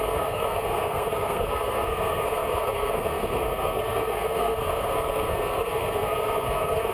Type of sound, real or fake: fake